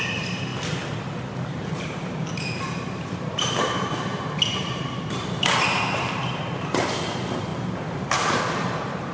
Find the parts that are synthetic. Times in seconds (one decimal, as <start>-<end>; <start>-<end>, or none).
0.0-0.5; 1.6-9.1